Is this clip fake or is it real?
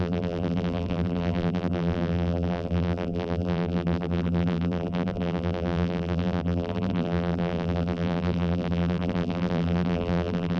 fake